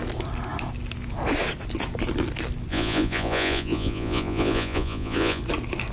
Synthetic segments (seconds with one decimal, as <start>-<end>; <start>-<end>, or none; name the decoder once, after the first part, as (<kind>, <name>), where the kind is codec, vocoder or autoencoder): 2.7-5.4 (vocoder, Vocos)